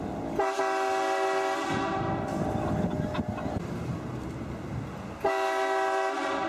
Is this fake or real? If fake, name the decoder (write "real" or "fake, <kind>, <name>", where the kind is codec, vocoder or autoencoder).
real